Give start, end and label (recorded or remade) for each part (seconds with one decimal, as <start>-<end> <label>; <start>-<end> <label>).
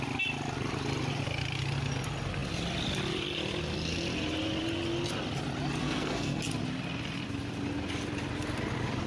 0.0-5.8 recorded; 5.8-6.4 remade; 6.4-9.1 recorded